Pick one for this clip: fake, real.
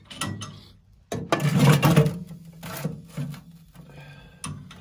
real